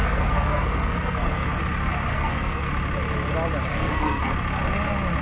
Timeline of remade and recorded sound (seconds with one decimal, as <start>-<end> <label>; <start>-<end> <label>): 0.0-1.6 remade; 1.6-2.1 recorded; 2.1-2.7 remade; 2.7-3.7 recorded; 3.7-4.3 remade; 4.3-5.2 recorded